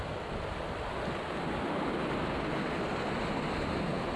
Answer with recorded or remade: recorded